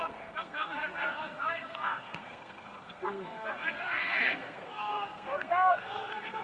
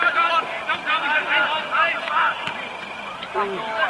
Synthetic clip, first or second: first